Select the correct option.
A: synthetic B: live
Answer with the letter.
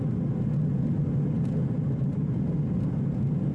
B